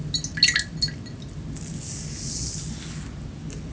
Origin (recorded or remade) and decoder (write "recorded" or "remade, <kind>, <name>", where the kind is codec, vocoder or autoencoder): recorded